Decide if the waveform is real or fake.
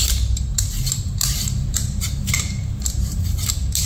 fake